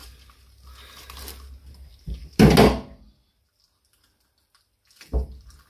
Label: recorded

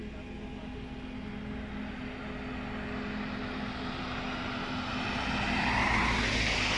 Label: recorded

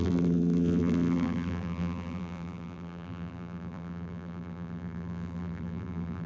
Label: remade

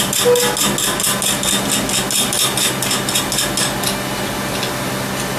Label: recorded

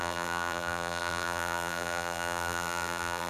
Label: remade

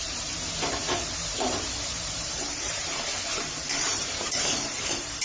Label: remade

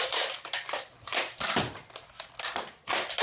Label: recorded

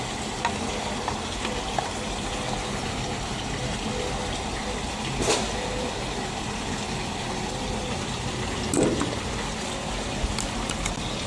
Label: recorded